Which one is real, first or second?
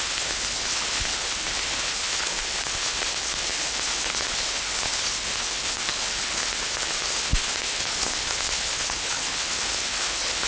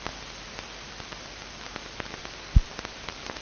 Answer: second